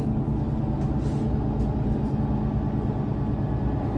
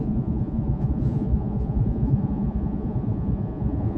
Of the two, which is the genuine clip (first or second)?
first